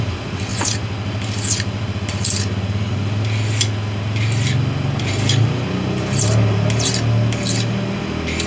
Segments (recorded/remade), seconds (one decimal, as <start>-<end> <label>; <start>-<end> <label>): 0.0-8.5 recorded